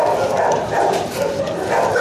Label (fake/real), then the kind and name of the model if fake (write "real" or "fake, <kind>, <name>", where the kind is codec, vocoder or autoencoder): real